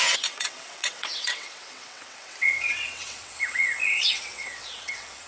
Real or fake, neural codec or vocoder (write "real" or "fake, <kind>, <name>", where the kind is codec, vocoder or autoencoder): fake, vocoder, WaveNeXt